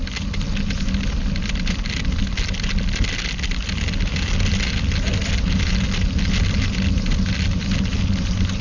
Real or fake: real